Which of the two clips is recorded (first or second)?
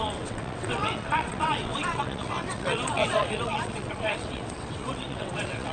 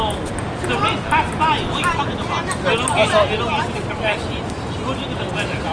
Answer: second